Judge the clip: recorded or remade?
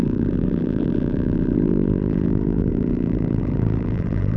remade